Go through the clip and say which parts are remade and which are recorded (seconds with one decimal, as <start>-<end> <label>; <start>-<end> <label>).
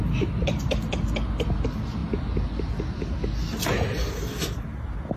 0.0-5.2 recorded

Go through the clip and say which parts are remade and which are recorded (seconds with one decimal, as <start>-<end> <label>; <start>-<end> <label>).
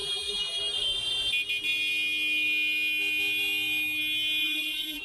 0.0-0.6 remade; 0.6-4.4 recorded; 4.4-5.0 remade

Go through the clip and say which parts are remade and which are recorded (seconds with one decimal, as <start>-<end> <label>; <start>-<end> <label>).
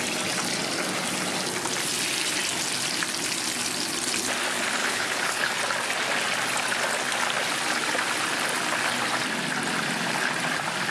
0.0-4.8 recorded; 4.8-5.5 remade; 5.5-10.9 recorded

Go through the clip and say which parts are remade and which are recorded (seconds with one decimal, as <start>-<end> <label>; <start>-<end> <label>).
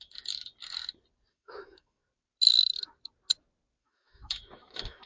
0.0-0.5 remade; 0.5-1.3 recorded; 1.3-2.0 remade; 2.0-3.8 recorded; 3.8-5.1 remade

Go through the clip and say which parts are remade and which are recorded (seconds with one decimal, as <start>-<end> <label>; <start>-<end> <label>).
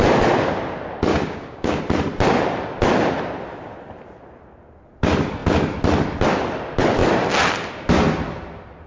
0.0-1.1 recorded; 1.1-1.8 remade; 1.8-8.9 recorded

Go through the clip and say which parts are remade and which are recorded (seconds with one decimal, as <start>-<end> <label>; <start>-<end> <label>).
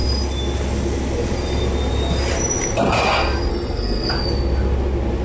0.0-3.5 recorded; 3.5-4.1 remade; 4.1-5.2 recorded